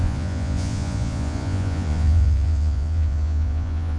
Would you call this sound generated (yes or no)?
yes